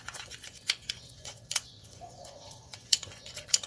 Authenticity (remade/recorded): remade